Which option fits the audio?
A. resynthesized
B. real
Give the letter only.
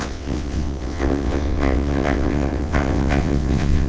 A